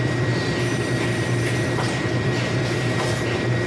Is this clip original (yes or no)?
no